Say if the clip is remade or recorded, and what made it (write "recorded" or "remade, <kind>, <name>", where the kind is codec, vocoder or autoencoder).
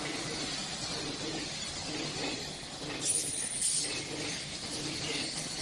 recorded